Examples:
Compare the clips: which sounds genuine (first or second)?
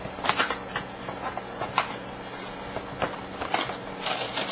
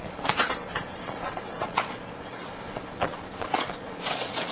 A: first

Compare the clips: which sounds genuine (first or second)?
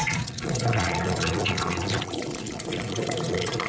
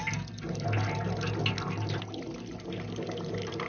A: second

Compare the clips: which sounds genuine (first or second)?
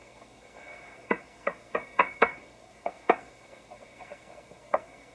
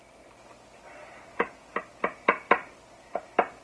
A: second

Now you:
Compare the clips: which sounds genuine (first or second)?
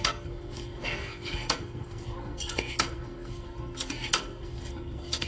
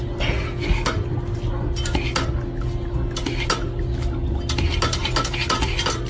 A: second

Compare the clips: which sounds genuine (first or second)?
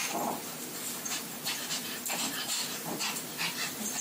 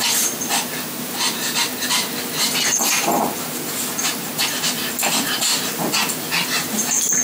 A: second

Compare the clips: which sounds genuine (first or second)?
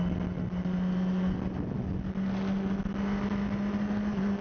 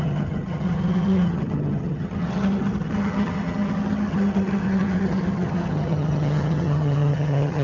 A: first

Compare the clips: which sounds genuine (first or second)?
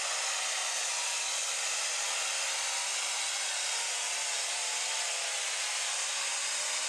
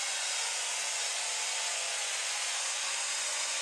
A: first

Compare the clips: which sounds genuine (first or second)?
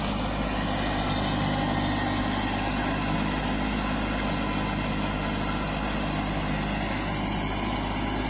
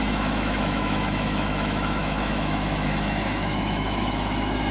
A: first